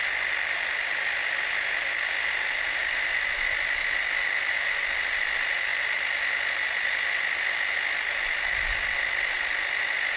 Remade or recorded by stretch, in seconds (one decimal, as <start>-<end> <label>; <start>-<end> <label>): 0.0-10.2 recorded